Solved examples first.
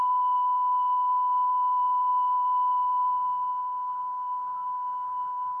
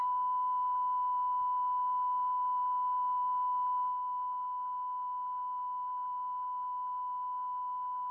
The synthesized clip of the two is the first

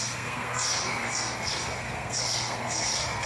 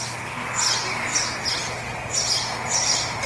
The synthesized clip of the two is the first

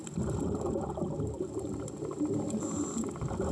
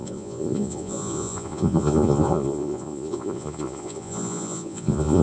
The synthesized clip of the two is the second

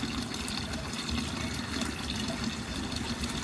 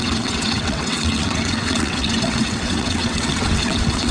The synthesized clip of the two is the second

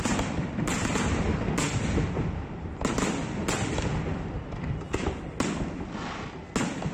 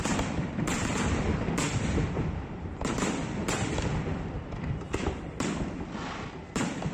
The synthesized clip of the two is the second